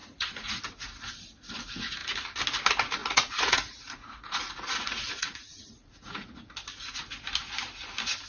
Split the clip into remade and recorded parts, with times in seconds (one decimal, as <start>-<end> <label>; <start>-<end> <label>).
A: 0.0-0.6 remade; 0.6-3.0 recorded; 3.0-6.4 remade; 6.4-8.3 recorded